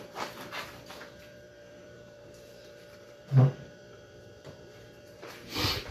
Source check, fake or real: fake